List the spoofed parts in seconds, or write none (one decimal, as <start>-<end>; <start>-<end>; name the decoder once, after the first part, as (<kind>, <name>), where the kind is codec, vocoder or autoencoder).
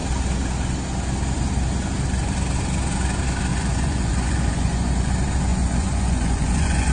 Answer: 3.5-5.1 (vocoder, Vocos); 5.5-6.9